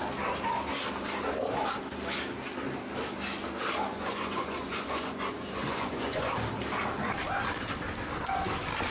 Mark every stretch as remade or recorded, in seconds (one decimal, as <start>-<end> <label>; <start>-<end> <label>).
0.0-3.9 recorded; 3.9-6.3 remade; 6.3-8.9 recorded